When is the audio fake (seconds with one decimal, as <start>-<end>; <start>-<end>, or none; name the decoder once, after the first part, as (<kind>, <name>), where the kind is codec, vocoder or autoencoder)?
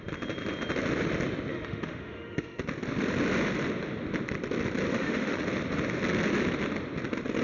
1.5-2.6 (autoencoder, DAC-VAE); 4.9-5.4